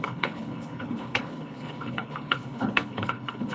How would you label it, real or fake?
fake